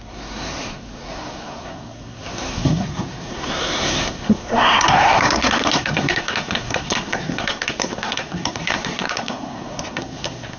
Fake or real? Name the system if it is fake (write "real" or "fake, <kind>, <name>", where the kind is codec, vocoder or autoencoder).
fake, codec, SNAC